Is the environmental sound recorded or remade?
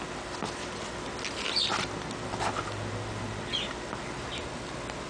recorded